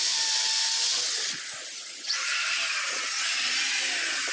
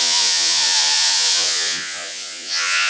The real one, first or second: first